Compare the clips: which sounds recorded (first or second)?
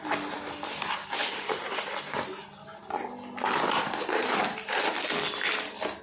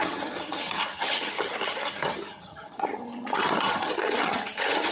first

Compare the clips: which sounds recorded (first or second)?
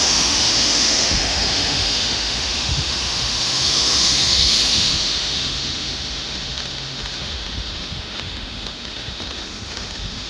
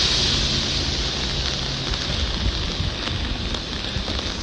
second